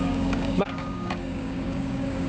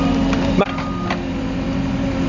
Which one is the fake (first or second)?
first